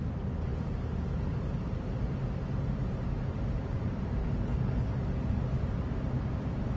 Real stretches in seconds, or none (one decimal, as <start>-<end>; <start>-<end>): 0.0-4.2; 4.9-6.8